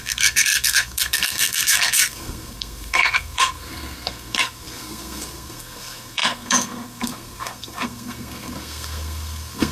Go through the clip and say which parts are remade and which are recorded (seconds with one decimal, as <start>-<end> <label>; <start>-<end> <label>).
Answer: 0.0-9.7 remade